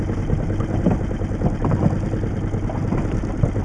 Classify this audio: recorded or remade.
recorded